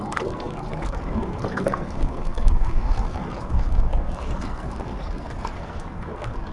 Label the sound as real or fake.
fake